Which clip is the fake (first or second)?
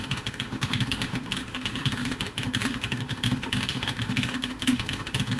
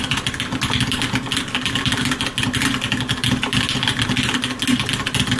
first